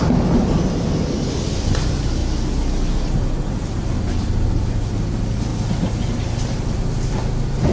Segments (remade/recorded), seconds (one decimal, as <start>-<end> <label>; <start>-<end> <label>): 0.0-2.2 remade; 2.2-3.5 recorded; 3.5-5.5 remade; 5.5-6.2 recorded; 6.2-7.7 remade